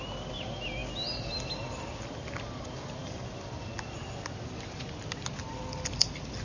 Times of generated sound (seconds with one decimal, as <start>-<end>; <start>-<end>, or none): none